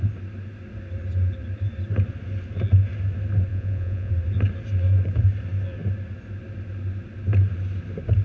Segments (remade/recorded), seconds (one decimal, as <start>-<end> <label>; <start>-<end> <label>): 0.0-3.5 recorded; 3.5-4.1 remade; 4.1-8.2 recorded